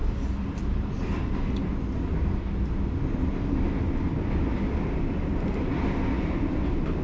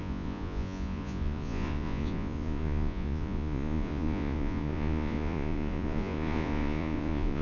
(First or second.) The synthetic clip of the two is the second